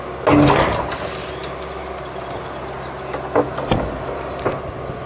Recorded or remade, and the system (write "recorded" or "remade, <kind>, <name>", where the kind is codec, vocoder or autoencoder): recorded